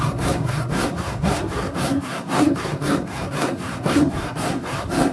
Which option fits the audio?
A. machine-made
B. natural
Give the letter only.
A